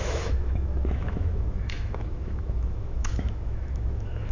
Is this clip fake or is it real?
fake